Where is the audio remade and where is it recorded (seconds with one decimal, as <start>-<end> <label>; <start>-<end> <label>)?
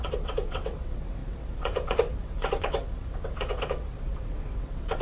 0.0-5.0 remade